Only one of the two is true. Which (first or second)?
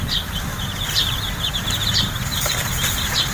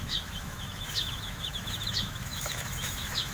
first